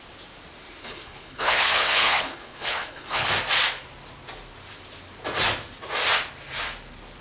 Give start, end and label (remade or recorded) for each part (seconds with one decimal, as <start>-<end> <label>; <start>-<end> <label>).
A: 0.0-0.8 recorded; 0.8-3.3 remade; 3.3-7.2 recorded